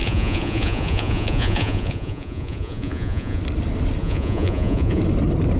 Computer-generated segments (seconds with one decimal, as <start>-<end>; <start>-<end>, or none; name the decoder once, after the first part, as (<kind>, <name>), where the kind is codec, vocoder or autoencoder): 0.0-3.4 (vocoder, Vocos); 4.0-5.0